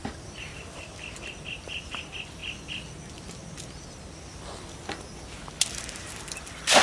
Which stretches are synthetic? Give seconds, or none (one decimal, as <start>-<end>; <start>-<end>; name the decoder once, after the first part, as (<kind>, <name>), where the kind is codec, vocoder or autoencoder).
none